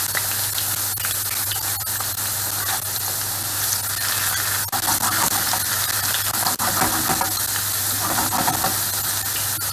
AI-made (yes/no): no